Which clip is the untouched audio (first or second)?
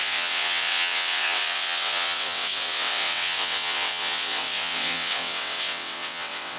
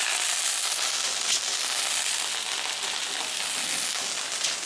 second